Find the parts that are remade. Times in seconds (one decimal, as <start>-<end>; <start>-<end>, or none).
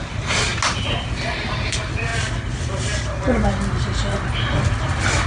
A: 0.0-0.5; 1.5-2.1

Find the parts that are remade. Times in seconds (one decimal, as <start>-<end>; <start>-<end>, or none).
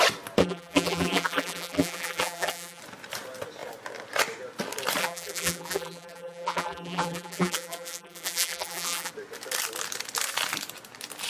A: 0.4-2.8; 5.0-9.1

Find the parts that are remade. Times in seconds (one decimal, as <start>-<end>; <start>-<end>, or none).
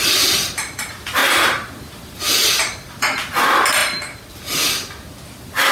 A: 1.2-2.2; 3.8-4.3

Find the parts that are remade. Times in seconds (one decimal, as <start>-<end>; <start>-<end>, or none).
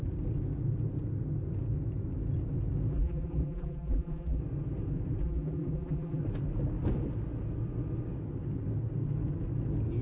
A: 2.9-4.4; 5.2-6.2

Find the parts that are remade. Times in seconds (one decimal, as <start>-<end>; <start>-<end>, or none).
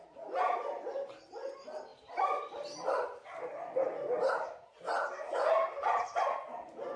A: 0.0-7.0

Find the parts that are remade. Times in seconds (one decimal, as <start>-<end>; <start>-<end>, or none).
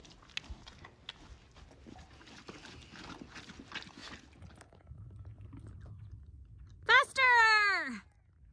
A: none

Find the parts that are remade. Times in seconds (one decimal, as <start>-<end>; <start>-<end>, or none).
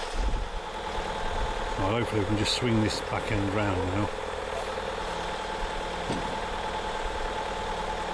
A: none